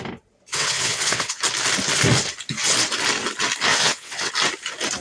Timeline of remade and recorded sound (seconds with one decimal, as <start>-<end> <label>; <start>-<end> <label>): 0.0-0.5 recorded; 0.5-1.4 remade; 1.4-3.7 recorded; 3.7-4.3 remade; 4.3-5.0 recorded